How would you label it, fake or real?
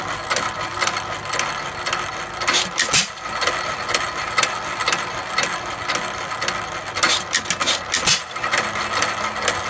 real